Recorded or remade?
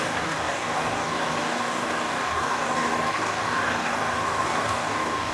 remade